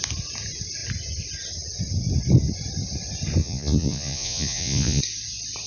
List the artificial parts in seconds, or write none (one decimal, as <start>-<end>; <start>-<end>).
3.4-5.0